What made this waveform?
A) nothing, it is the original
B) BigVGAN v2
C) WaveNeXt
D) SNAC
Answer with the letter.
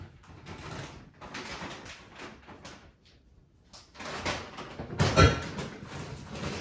A